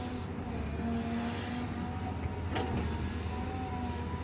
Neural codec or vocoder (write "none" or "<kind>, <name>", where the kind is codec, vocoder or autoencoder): none